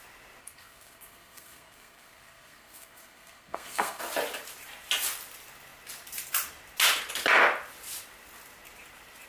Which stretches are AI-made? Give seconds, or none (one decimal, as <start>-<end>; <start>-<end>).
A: 0.4-4.0